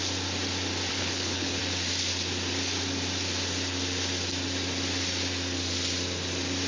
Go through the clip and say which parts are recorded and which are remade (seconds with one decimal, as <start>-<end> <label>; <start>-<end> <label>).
0.0-0.9 recorded; 0.9-1.6 remade; 1.6-6.7 recorded